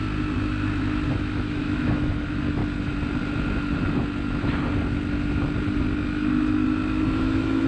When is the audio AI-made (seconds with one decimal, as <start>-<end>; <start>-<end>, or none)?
1.1-2.6; 7.2-7.7